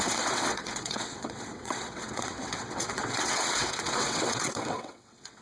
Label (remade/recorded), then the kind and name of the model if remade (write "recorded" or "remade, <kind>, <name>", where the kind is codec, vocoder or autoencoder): remade, vocoder, WaveNeXt